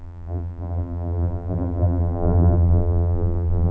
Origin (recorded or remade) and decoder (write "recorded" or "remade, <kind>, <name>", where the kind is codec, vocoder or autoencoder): remade, vocoder, BigVGAN v2